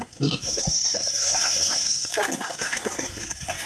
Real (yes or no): no